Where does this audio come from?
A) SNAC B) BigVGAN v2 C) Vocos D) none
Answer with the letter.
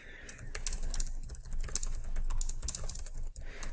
D